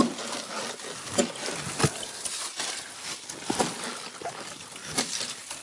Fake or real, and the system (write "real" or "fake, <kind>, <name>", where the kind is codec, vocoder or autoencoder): real